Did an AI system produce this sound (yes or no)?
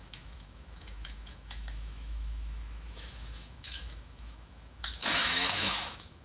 yes